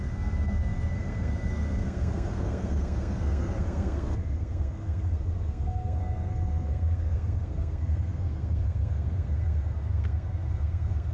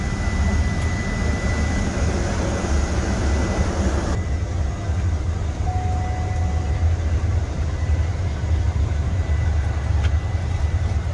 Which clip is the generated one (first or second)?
first